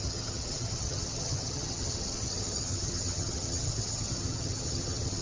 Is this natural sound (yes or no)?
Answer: no